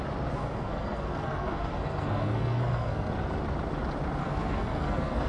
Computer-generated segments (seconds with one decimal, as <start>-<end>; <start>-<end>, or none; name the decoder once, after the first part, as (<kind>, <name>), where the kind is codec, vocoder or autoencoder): 0.4-3.1 (codec, SNAC); 4.2-5.3